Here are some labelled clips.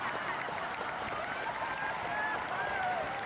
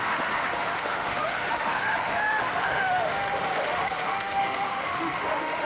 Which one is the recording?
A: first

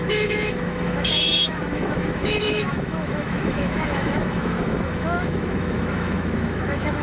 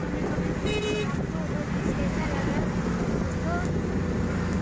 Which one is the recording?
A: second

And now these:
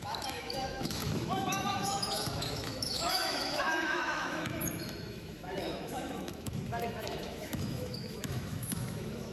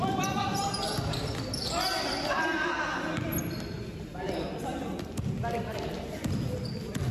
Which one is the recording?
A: second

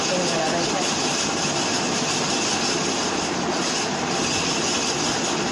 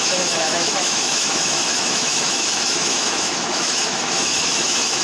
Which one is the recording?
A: first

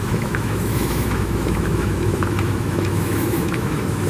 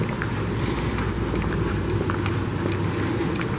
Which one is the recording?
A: second